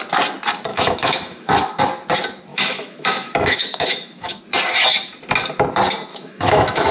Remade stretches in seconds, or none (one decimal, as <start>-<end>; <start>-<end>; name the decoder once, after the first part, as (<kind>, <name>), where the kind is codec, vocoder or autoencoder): 0.7-1.8 (autoencoder, DAC-VAE); 2.5-4.4; 6.1-6.9